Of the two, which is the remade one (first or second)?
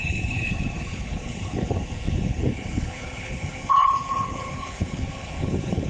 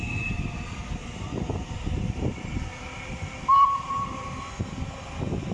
first